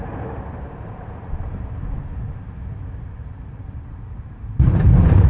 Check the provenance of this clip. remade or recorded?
remade